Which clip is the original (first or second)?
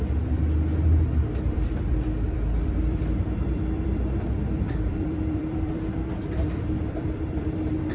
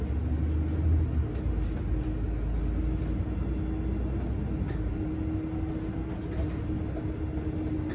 second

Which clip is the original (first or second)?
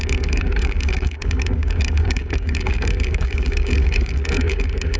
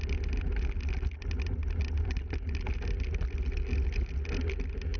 second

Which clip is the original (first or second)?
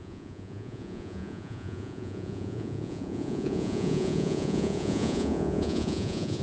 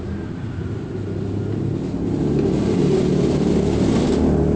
second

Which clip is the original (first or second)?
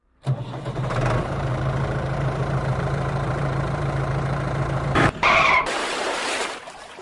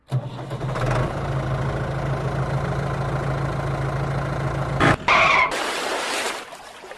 second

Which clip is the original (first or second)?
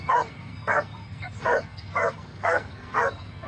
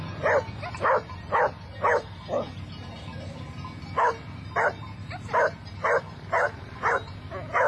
second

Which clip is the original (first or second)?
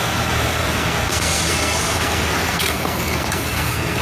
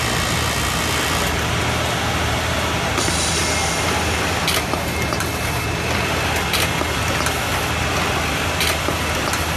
second